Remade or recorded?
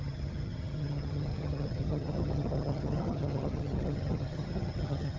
remade